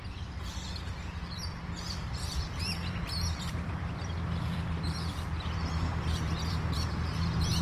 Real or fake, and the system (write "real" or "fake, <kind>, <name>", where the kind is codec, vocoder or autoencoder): fake, vocoder, BigVGAN v2